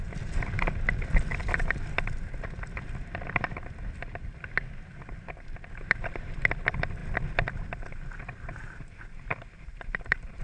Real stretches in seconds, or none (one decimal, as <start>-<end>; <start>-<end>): 7.0-7.6